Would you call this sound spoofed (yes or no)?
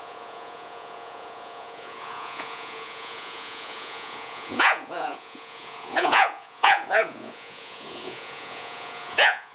yes